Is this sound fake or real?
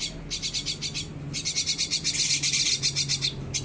real